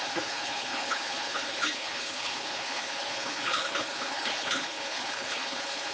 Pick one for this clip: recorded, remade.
remade